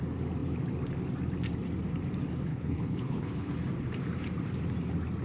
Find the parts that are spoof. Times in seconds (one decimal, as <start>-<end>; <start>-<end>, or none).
2.5-3.5